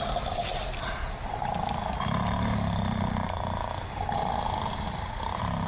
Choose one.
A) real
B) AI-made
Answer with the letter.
A